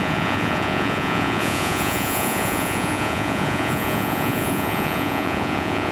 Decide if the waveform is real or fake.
fake